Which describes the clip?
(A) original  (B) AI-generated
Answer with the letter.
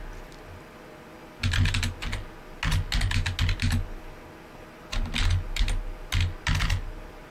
A